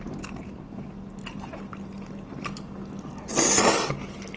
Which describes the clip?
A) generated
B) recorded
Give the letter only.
B